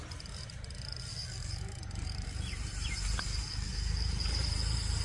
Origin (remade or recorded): remade